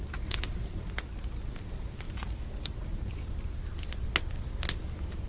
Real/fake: real